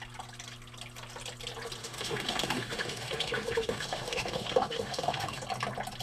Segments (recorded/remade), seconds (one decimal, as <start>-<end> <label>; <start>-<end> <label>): 0.0-1.8 recorded; 1.8-5.4 remade; 5.4-6.0 recorded